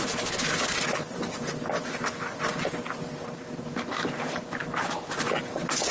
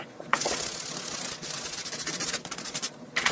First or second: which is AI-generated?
second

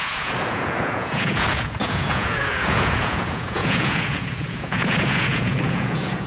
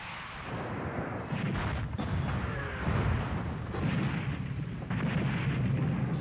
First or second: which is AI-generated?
first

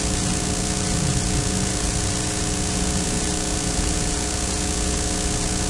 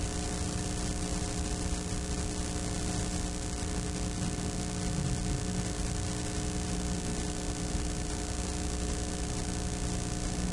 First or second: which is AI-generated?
first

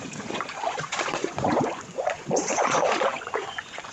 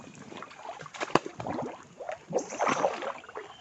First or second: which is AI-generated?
first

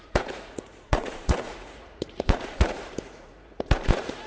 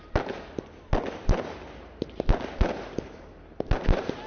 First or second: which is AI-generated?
first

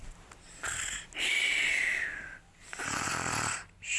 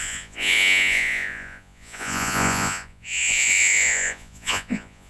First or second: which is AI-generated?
second